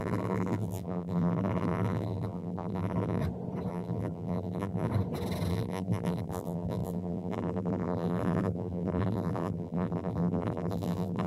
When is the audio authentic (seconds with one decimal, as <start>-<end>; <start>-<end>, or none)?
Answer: 3.2-3.7; 4.9-5.5